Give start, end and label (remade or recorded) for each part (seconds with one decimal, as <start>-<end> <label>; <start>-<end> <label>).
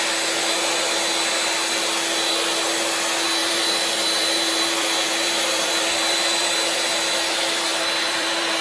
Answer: 0.0-3.4 recorded; 3.4-6.5 remade; 6.5-7.7 recorded; 7.7-8.6 remade